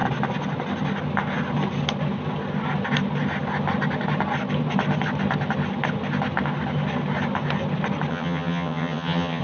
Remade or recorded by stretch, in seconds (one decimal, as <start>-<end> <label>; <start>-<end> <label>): 0.0-8.1 recorded; 8.1-9.4 remade